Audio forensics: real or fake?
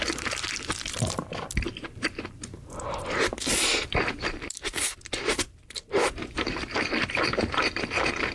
fake